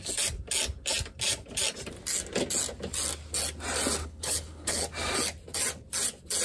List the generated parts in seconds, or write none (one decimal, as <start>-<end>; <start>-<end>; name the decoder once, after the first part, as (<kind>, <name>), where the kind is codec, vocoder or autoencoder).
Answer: 4.0-4.8 (codec, HILCodec)